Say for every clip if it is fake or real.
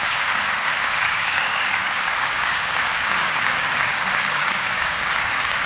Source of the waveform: fake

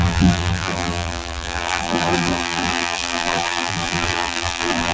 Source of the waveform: fake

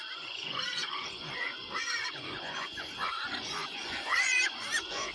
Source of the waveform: fake